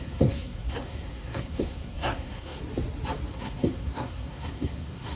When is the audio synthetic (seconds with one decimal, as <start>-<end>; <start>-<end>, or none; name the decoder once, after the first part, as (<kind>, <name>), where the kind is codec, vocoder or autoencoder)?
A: 0.0-2.6 (codec, SNAC); 3.3-5.2